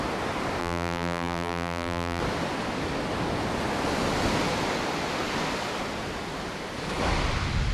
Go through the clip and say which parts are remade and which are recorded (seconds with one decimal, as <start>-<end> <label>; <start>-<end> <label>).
0.0-0.6 recorded; 0.6-2.2 remade; 2.2-7.7 recorded